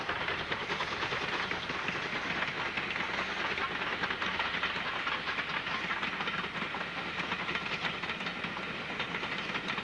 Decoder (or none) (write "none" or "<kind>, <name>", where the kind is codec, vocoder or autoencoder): none